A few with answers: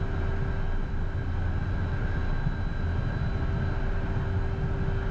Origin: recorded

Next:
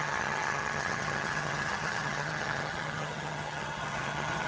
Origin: remade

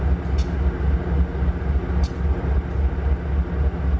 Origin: recorded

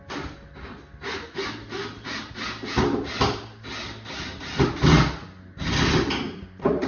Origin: recorded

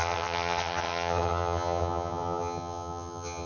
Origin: remade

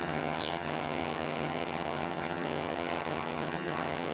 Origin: remade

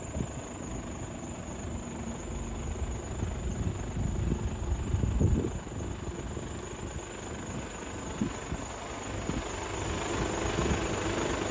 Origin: recorded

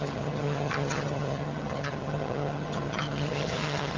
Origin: remade